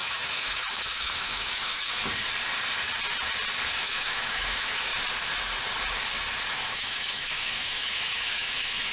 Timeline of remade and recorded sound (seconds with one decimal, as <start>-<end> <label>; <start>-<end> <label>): 0.0-2.0 remade; 2.0-3.8 recorded; 3.8-4.9 remade; 4.9-6.5 recorded; 6.5-8.9 remade